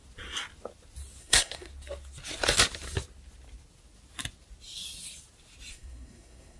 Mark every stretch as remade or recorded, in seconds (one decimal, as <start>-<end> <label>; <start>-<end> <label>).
0.0-1.2 recorded; 1.2-1.7 remade; 1.7-5.7 recorded; 5.7-6.6 remade